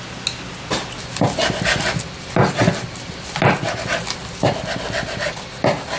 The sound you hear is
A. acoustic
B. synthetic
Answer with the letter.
A